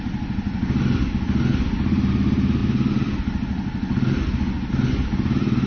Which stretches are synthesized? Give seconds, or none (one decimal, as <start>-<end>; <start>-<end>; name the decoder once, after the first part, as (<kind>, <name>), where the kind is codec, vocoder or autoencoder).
none